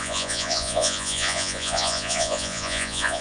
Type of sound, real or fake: fake